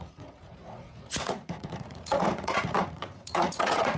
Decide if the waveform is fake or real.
fake